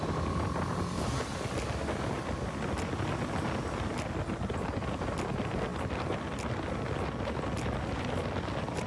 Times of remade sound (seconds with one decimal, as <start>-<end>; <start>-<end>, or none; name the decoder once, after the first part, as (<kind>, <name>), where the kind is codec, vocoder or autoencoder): none